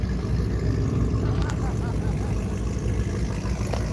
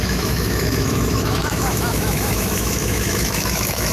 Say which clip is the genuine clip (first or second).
first